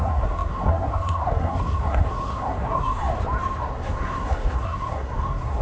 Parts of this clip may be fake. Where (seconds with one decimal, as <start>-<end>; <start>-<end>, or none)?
0.0-3.0; 3.6-5.6

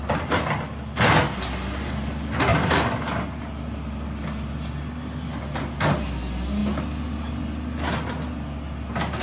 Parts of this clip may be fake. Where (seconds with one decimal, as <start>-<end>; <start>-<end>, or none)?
none

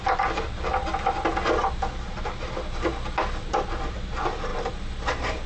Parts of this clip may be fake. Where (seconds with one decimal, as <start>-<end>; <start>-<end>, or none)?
none

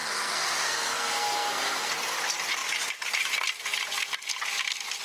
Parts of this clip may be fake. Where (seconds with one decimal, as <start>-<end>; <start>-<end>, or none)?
0.0-1.9

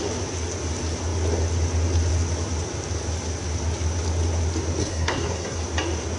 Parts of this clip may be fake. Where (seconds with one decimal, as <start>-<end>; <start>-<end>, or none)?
4.8-5.6